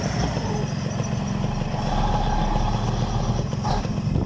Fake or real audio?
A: real